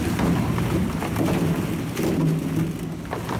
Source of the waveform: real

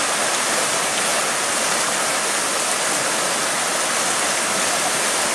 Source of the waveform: real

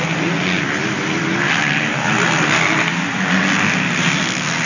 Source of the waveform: real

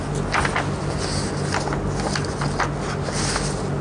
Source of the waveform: real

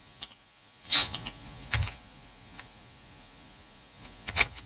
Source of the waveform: fake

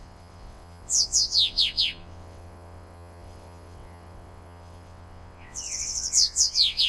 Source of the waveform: fake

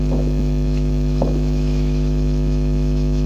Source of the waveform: fake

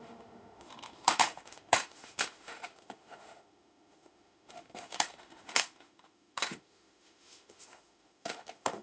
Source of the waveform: fake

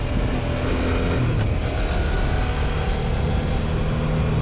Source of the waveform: real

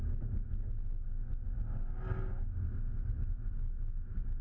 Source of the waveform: real